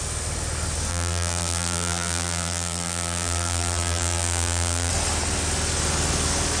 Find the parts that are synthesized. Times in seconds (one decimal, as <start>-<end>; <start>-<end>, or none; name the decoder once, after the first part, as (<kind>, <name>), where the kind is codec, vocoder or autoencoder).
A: 0.9-4.9 (vocoder, BigVGAN v2)